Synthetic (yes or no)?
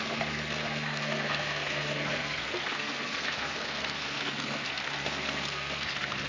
yes